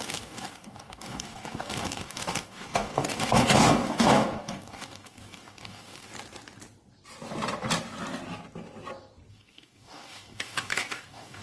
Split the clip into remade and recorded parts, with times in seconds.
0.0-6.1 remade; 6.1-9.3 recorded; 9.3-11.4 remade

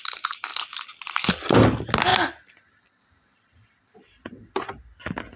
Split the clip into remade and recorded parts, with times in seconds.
0.0-0.5 recorded; 0.5-1.3 remade; 1.3-2.1 recorded; 2.1-4.3 remade; 4.3-5.4 recorded

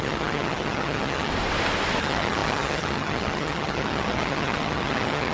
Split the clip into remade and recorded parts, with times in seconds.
0.0-1.3 remade; 1.3-2.0 recorded; 2.0-5.3 remade

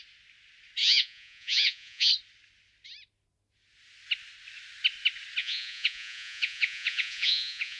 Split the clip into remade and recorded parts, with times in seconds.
0.0-0.8 recorded; 0.8-2.1 remade; 2.1-5.4 recorded; 5.4-7.8 remade

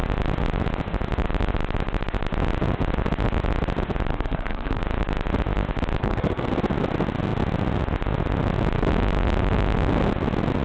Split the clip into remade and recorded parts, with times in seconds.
0.0-4.1 recorded; 4.1-4.8 remade; 4.8-6.0 recorded; 6.0-6.5 remade; 6.5-10.6 recorded

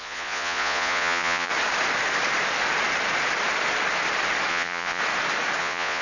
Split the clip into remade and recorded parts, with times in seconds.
0.0-1.5 remade; 1.5-4.5 recorded; 4.5-5.0 remade; 5.0-5.6 recorded; 5.6-6.0 remade